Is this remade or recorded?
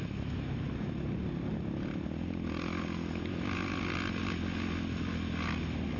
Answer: recorded